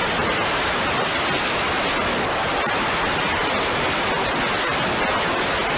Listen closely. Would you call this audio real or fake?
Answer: real